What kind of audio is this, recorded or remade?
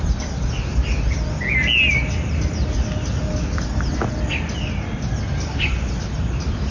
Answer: recorded